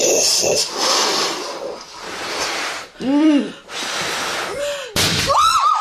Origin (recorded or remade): remade